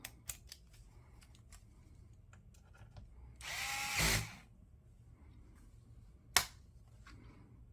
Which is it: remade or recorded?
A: recorded